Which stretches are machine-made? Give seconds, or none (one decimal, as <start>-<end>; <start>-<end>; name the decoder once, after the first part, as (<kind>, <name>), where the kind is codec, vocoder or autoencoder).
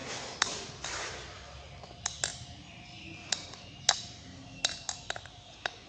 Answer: none